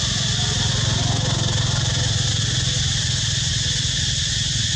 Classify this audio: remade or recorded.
recorded